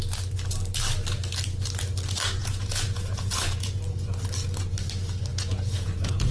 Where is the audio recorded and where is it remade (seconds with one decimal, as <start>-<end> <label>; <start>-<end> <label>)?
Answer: 0.0-2.4 recorded; 2.4-3.8 remade; 3.8-5.3 recorded; 5.3-6.3 remade